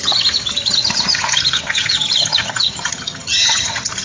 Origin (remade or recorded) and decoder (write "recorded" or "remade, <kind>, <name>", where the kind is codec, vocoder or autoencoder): remade, vocoder, HiFi-GAN